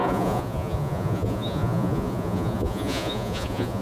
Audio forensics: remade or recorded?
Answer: remade